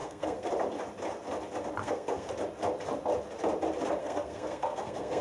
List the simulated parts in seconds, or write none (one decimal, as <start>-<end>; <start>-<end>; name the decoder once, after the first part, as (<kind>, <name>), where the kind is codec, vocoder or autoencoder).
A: 0.0-0.5 (codec, SNAC); 1.8-2.3; 4.0-5.2